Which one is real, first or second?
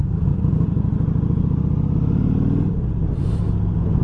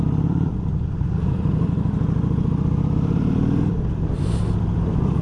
first